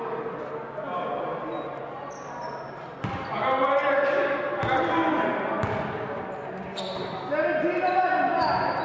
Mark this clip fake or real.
real